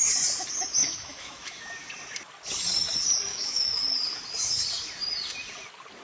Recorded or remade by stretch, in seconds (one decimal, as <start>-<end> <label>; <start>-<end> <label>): 0.0-0.8 recorded; 0.8-1.7 remade; 1.7-3.3 recorded; 3.3-3.8 remade; 3.8-6.0 recorded